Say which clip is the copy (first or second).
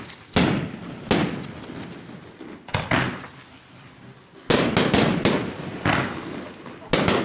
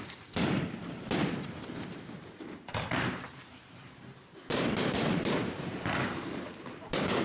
second